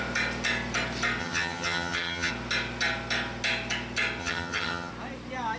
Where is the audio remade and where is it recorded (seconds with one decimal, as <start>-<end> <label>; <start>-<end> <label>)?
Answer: 0.0-1.2 recorded; 1.2-2.3 remade; 2.3-4.2 recorded; 4.2-4.9 remade; 4.9-5.6 recorded

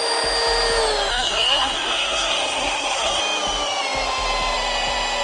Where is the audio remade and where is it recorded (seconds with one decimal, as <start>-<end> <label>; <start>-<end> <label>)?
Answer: 0.0-1.1 recorded; 1.1-3.2 remade; 3.2-5.2 recorded